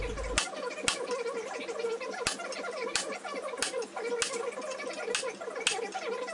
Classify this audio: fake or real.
real